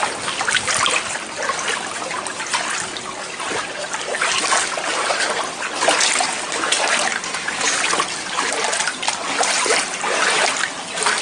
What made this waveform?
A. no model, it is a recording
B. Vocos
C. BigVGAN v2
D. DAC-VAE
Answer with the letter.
A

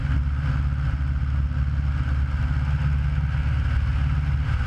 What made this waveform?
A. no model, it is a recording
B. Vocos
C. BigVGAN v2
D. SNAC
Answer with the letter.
A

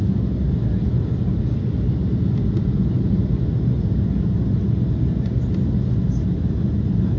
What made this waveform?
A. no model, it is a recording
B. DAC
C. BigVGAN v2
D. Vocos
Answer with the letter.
A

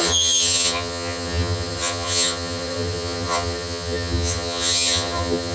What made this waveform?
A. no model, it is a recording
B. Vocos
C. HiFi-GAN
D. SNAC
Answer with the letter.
C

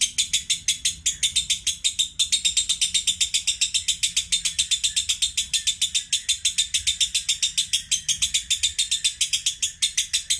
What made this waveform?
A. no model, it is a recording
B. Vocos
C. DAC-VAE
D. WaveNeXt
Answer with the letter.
A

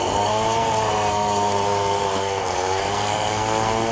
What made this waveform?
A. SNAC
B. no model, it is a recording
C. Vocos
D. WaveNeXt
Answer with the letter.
A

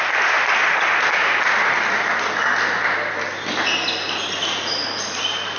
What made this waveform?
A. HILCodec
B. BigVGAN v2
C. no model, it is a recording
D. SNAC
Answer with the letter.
C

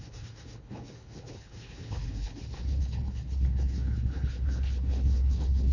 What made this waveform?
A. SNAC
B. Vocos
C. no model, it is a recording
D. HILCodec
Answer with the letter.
D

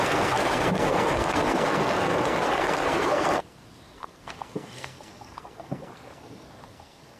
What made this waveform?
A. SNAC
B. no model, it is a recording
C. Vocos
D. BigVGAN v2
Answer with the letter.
A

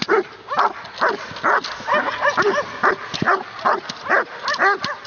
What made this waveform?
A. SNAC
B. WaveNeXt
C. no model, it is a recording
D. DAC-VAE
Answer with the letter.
C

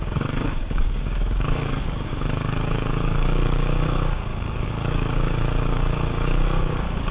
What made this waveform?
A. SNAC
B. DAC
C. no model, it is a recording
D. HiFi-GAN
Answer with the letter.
B